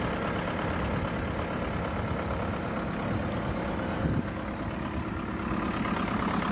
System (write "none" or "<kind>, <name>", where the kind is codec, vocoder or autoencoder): none